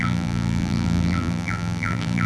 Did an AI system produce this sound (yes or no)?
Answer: yes